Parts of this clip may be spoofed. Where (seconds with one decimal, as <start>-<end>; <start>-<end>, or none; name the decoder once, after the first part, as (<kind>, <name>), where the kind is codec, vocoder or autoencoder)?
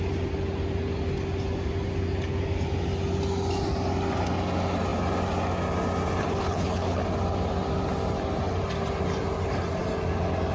6.2-7.0 (codec, HILCodec)